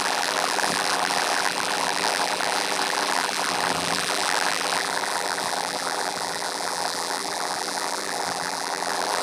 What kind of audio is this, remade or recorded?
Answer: remade